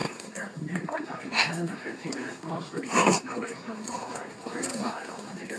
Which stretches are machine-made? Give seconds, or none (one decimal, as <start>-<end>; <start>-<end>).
0.0-5.6